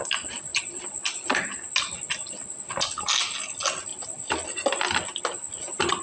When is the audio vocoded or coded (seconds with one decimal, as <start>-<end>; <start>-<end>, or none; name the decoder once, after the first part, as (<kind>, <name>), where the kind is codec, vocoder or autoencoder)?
3.9-5.2 (vocoder, BigVGAN v2)